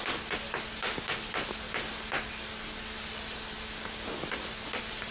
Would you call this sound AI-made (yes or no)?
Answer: no